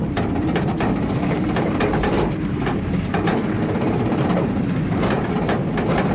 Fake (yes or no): yes